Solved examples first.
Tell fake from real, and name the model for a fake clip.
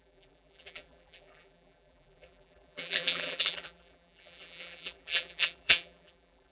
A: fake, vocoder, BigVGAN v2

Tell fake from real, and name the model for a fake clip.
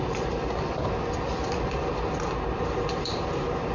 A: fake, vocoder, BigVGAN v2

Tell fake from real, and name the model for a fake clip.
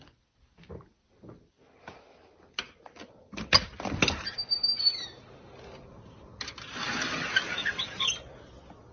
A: real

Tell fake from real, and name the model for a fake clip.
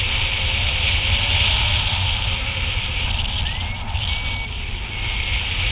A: real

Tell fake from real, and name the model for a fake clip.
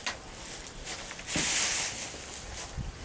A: real